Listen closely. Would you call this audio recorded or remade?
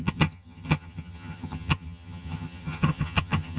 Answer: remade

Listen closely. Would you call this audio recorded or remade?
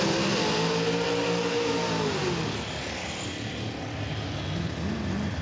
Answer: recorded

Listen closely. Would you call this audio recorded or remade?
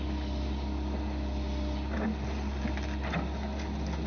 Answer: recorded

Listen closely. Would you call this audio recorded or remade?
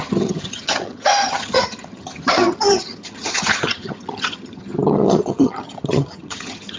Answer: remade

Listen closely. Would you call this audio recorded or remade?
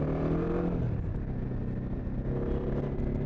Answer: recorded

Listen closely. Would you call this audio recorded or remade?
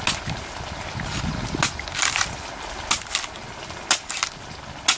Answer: recorded